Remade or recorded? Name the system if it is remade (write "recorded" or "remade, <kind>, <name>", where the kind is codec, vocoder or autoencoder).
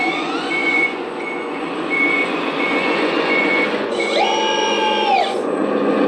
remade, vocoder, Vocos